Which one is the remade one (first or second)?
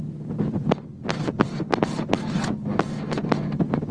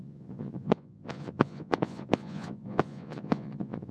second